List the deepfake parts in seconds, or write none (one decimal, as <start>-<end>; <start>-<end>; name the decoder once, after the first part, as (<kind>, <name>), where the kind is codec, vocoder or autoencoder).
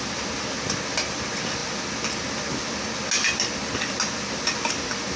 none